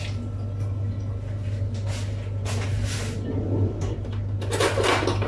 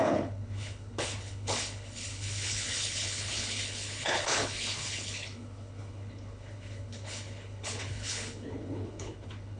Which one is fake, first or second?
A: second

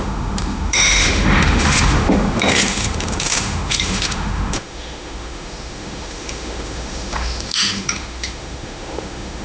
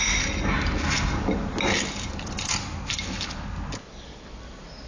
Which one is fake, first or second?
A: first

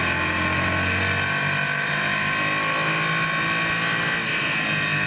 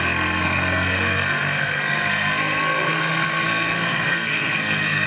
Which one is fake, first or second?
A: second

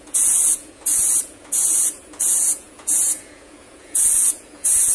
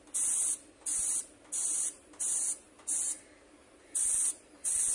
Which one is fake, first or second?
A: first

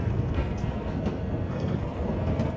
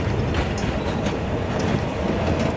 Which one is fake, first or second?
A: first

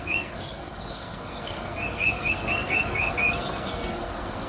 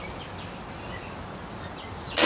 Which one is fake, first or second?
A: first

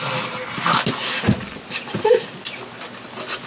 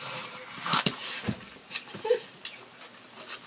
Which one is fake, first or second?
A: second